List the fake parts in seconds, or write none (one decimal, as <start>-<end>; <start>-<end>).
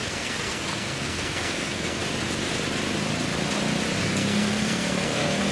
0.0-2.0; 4.0-5.5